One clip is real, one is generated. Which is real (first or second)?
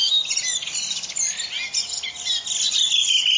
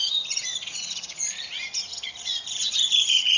first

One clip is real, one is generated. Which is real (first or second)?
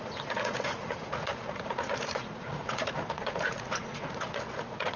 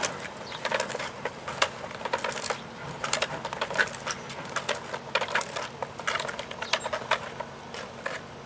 second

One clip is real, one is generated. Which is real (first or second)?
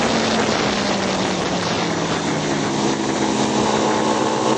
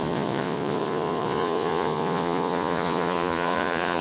first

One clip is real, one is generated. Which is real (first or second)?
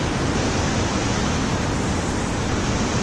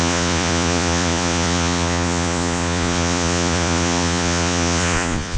first